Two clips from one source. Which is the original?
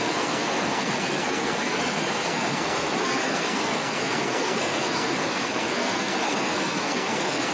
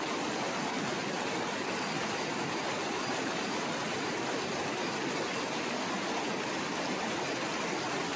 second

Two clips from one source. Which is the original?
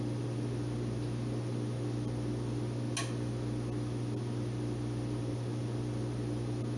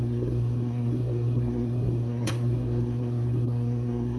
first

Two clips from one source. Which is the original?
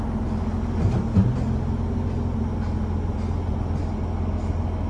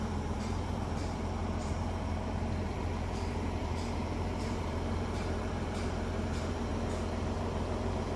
first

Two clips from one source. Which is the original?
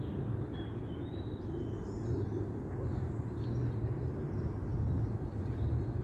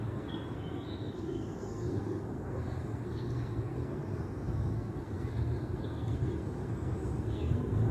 first